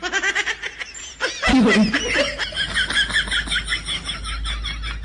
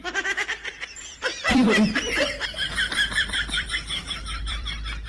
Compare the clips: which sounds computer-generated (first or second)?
second